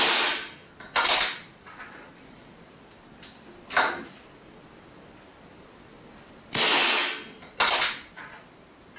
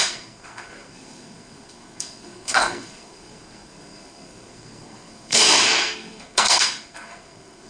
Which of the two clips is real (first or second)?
first